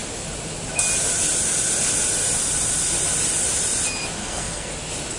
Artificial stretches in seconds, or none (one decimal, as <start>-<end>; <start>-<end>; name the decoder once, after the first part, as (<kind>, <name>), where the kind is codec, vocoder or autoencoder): 4.2-4.7 (codec, SNAC)